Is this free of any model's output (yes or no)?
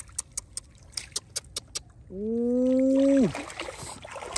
yes